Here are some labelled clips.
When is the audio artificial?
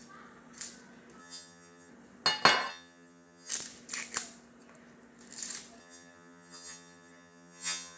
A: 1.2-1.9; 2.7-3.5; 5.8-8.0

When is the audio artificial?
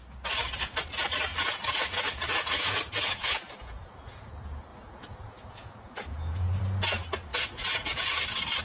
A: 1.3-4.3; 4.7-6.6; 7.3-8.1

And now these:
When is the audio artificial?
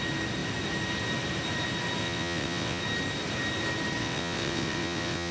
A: 2.0-2.8; 4.0-5.3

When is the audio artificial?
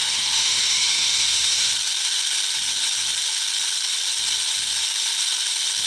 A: 0.0-1.7